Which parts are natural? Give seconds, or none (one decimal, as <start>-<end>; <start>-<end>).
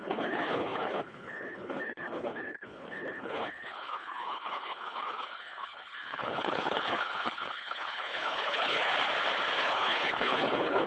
8.9-9.6